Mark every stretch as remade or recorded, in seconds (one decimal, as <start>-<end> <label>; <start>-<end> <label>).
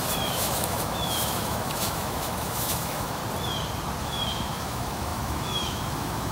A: 0.0-3.2 remade; 3.2-4.0 recorded; 4.0-6.3 remade